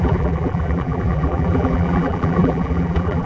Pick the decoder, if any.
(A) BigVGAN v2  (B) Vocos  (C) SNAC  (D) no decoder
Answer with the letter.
A